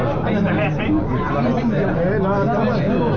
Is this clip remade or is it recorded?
recorded